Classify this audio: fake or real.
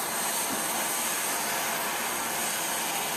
real